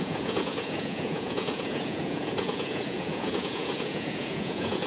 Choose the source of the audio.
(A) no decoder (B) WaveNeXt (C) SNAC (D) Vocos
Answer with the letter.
D